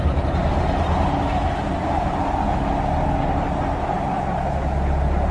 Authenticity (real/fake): real